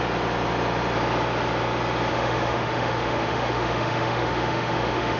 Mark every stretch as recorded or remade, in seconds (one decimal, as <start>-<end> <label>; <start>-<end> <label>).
0.0-2.1 recorded; 2.1-5.2 remade